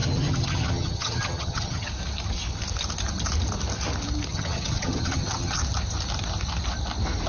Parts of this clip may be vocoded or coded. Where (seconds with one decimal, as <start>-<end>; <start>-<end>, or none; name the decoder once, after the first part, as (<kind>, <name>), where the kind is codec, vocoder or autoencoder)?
0.0-1.9 (vocoder, HiFi-GAN); 4.3-5.6